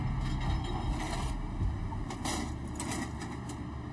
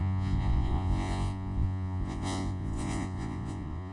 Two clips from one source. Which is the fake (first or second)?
second